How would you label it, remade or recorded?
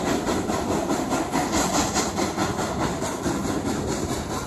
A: recorded